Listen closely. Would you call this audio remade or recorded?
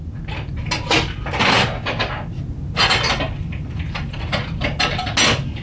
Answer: recorded